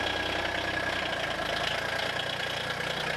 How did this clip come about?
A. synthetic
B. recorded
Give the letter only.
B